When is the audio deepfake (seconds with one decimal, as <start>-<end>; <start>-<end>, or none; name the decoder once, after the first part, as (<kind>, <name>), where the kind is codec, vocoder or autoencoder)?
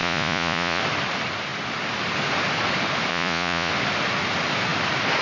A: 0.0-0.8 (vocoder, Vocos); 3.1-3.7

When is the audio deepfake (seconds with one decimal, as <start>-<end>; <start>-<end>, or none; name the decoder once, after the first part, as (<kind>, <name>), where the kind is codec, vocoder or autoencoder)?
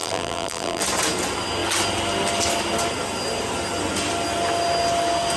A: 0.0-0.8 (vocoder, BigVGAN v2)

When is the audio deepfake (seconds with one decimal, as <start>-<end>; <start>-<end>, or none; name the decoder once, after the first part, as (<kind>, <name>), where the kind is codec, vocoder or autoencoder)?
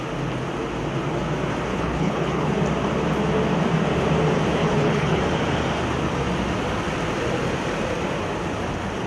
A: 1.7-2.5 (codec, HILCodec); 4.6-5.2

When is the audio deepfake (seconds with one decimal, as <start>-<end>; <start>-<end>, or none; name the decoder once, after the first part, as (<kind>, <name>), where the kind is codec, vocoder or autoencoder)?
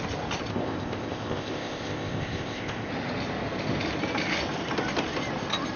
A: 0.5-2.9 (codec, ZipCodec)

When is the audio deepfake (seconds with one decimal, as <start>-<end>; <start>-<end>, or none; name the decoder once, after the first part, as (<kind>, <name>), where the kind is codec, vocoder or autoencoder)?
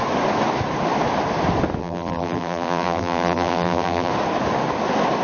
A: 1.8-4.1 (vocoder, BigVGAN v2)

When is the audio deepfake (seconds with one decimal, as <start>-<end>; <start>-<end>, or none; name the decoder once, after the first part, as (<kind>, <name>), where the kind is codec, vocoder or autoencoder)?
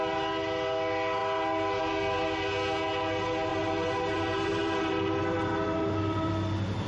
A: 3.5-6.3 (vocoder, BigVGAN v2)